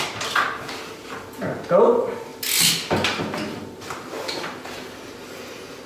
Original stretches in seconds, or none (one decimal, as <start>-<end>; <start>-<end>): 0.0-5.9